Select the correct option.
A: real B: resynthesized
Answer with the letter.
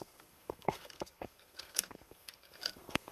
B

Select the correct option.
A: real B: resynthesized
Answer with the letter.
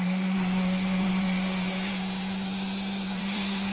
B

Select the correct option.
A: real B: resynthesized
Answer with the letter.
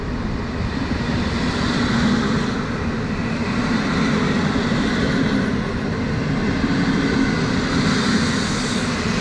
A